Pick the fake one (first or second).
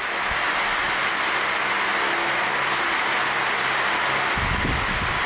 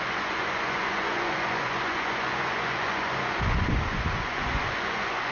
second